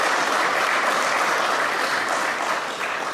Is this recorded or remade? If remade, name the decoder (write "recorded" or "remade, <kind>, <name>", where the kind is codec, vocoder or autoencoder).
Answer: recorded